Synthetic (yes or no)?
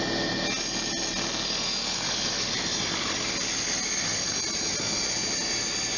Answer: no